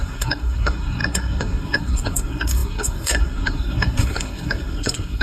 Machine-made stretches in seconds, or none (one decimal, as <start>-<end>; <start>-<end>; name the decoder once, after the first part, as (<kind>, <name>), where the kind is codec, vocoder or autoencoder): 0.0-5.2 (codec, SNAC)